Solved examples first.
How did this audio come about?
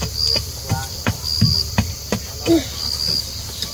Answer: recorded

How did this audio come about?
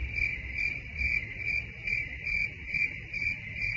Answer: recorded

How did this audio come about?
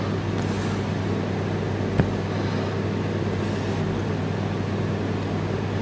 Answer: recorded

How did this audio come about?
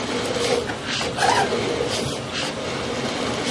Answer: recorded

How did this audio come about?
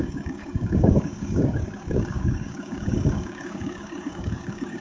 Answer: remade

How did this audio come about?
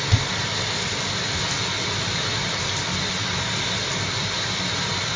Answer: recorded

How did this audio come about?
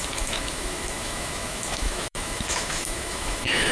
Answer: remade